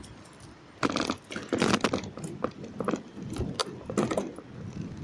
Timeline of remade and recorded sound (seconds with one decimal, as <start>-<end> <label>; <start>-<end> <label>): 0.0-5.0 recorded

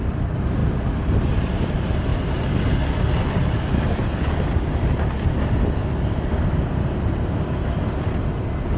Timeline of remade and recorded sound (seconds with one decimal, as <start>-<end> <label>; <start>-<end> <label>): 0.0-8.8 recorded

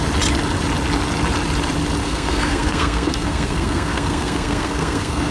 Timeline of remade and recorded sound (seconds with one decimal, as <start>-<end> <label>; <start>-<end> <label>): 0.0-2.0 recorded; 2.0-5.3 remade